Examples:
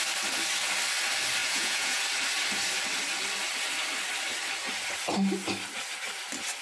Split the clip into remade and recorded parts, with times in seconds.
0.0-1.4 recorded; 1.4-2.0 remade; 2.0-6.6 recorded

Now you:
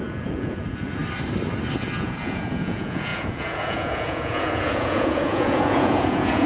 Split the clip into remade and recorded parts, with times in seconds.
0.0-1.0 remade; 1.0-2.0 recorded; 2.0-6.5 remade

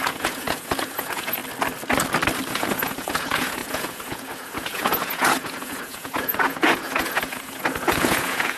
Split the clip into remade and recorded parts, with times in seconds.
0.0-1.4 remade; 1.4-2.5 recorded; 2.5-8.6 remade

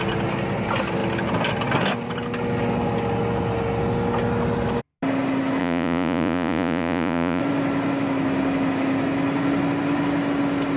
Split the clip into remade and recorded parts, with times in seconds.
0.0-5.6 recorded; 5.6-7.4 remade; 7.4-10.8 recorded

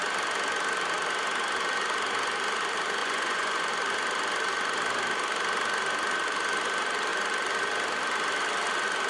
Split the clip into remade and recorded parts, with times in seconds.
0.0-3.0 recorded; 3.0-3.7 remade; 3.7-9.1 recorded